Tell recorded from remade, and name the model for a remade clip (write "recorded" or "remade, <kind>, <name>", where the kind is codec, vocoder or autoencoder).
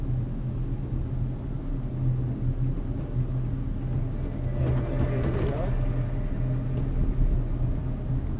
recorded